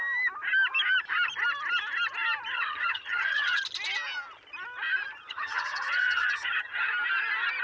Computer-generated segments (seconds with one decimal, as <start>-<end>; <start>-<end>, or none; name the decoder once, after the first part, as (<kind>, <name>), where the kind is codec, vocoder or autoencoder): 2.5-3.6 (vocoder, HiFi-GAN); 5.3-6.9